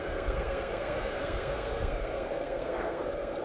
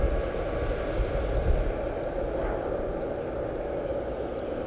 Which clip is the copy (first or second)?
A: first